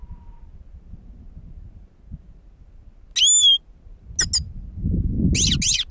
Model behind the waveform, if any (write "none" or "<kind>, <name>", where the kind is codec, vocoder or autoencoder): none